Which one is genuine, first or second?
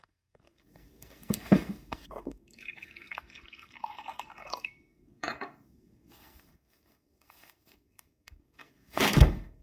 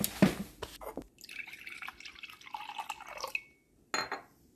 second